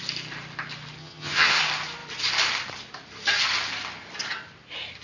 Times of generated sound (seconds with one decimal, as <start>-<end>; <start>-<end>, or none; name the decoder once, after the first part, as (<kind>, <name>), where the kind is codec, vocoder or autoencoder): 1.0-1.6 (vocoder, HiFi-GAN)